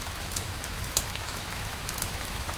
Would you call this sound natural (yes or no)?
no